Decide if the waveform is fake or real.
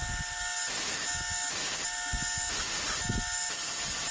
real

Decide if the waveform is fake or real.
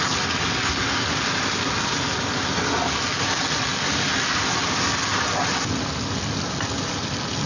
real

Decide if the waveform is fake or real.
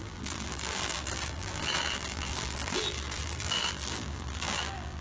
fake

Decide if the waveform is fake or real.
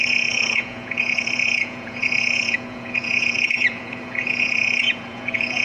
fake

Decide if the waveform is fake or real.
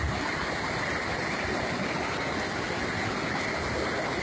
real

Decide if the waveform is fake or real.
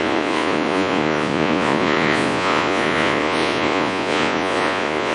fake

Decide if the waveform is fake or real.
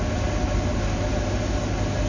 real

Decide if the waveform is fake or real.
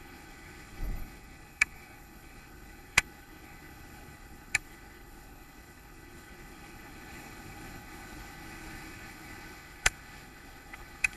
fake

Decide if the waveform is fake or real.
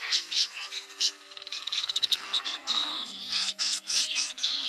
fake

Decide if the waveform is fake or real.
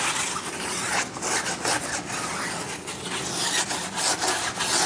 real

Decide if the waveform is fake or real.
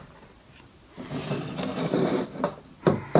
real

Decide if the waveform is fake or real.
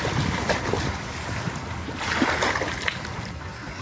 real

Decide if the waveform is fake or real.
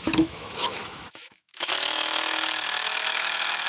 fake